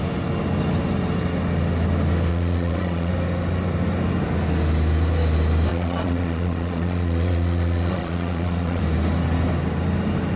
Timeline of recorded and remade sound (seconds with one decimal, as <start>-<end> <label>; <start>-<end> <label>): 0.0-2.3 recorded; 2.3-3.1 remade; 3.1-5.7 recorded; 5.7-8.8 remade; 8.8-10.4 recorded